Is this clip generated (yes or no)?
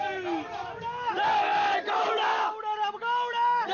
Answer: no